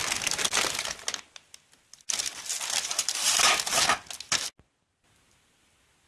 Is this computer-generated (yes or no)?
no